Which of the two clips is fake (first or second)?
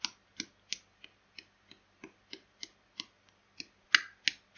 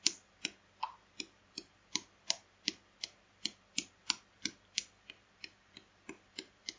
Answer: second